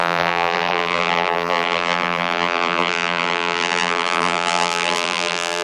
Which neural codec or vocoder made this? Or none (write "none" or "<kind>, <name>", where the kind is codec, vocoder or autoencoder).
vocoder, BigVGAN v2